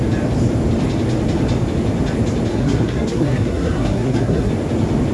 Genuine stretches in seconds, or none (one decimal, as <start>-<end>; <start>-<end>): 0.0-2.5; 4.5-5.1